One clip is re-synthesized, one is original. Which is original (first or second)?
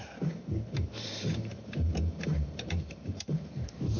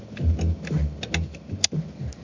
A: second